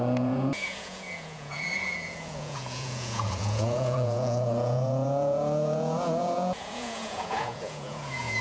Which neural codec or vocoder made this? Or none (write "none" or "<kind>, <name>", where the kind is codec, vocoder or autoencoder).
vocoder, Vocos